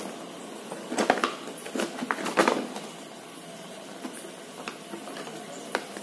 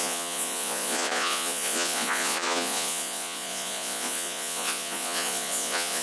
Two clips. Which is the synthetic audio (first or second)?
second